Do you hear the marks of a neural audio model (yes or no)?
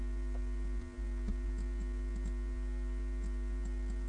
no